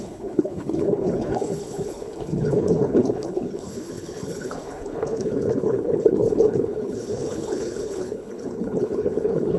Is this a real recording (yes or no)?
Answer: no